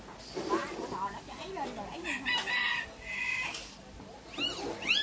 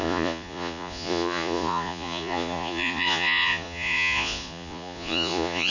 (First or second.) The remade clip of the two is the second